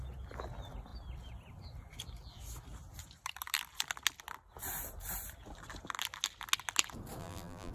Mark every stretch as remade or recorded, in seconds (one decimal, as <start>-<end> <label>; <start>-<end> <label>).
0.0-7.2 recorded; 7.2-7.7 remade